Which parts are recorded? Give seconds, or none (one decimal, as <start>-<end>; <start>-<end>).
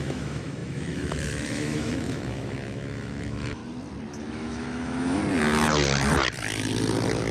3.6-4.3; 5.2-7.3